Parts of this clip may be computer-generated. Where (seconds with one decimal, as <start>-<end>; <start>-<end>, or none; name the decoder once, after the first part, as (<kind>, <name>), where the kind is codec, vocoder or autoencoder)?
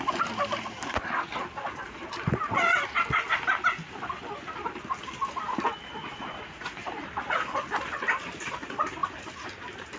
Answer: 6.0-6.7 (vocoder, Vocos)